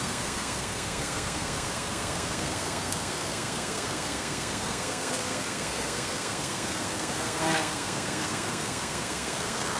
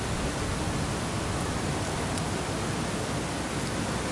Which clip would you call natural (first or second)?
second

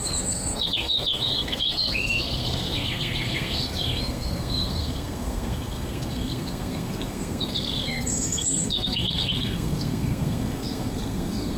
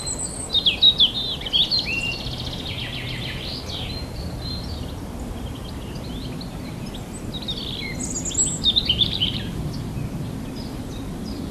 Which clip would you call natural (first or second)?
second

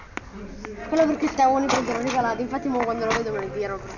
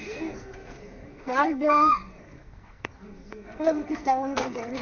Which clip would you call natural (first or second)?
first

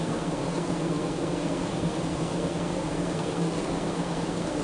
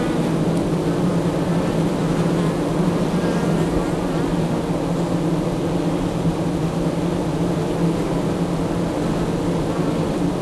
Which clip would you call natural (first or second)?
second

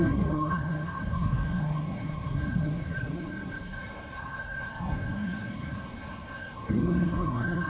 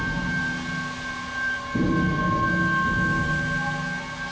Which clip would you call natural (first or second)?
second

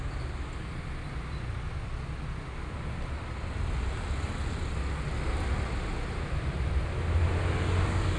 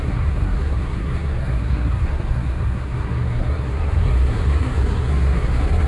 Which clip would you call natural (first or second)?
first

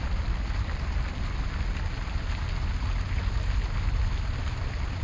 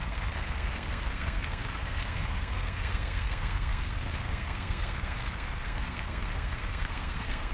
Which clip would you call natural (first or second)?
first